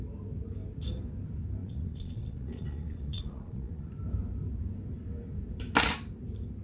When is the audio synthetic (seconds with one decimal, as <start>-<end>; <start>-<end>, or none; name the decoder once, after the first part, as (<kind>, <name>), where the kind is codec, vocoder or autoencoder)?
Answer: 1.6-3.9 (vocoder, Vocos)